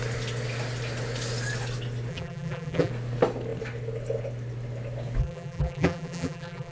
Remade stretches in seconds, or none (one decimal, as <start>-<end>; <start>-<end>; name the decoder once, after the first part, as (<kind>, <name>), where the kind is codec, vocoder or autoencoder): 2.1-2.9 (vocoder, BigVGAN v2); 5.2-6.7